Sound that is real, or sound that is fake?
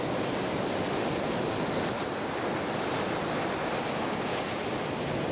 real